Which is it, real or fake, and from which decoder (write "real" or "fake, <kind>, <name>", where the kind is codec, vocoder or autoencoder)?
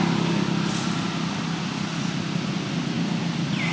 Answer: real